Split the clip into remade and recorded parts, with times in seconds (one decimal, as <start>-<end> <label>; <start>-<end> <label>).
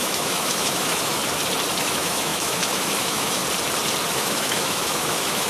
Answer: 0.0-1.2 remade; 1.2-1.8 recorded; 1.8-3.4 remade; 3.4-4.1 recorded; 4.1-5.5 remade